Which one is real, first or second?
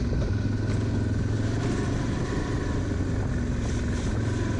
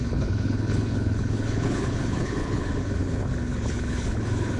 first